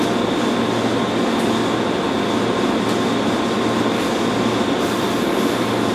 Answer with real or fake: real